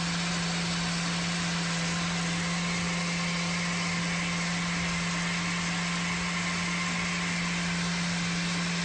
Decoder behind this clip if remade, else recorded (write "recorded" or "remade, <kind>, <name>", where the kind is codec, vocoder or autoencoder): recorded